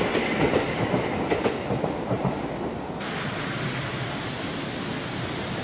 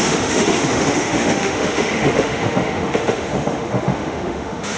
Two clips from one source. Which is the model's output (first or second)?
second